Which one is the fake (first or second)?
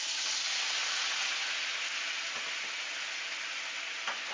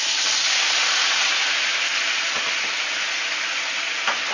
second